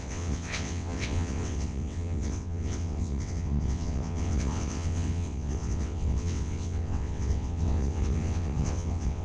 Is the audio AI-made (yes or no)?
yes